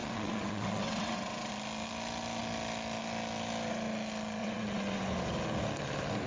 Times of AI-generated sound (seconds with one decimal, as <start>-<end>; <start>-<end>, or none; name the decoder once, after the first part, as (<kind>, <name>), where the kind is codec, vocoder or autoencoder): 0.0-1.5 (vocoder, WaveNeXt); 4.4-5.0